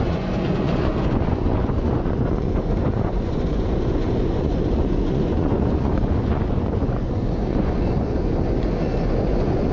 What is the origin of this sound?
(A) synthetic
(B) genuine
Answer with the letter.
A